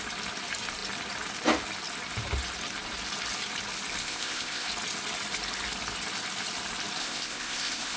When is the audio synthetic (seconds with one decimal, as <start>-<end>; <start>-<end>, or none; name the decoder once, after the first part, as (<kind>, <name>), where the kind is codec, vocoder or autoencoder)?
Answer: 4.0-4.7 (codec, ZipCodec); 7.0-8.0